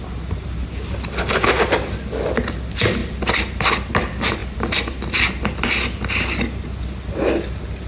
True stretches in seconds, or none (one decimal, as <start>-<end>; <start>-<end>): 0.0-7.9